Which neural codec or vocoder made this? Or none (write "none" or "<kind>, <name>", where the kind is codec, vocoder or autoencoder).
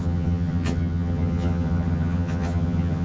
vocoder, HiFi-GAN